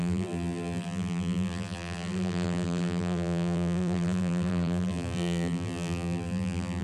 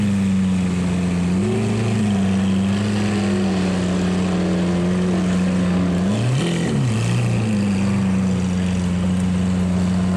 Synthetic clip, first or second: first